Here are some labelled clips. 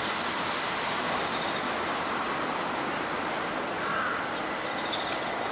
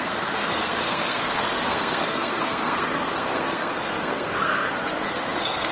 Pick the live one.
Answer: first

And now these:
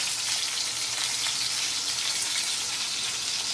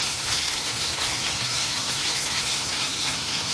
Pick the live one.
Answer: first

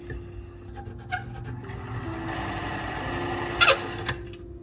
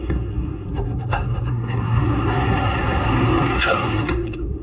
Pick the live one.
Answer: first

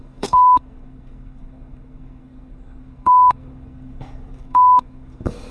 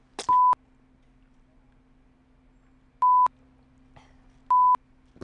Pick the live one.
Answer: second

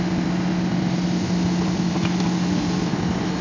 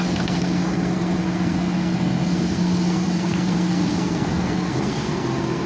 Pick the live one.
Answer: first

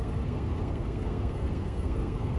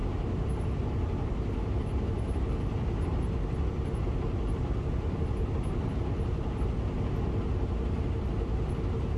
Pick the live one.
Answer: second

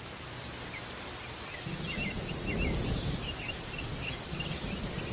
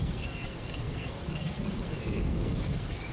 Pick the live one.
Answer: first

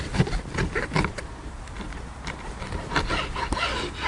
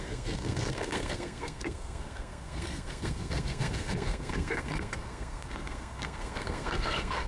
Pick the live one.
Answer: first